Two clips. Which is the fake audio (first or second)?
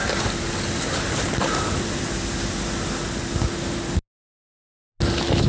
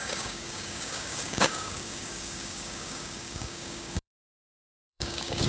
second